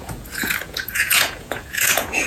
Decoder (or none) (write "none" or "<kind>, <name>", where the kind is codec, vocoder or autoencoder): vocoder, Vocos